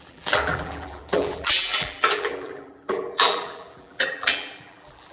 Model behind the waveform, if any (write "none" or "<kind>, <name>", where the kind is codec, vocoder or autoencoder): vocoder, BigVGAN v2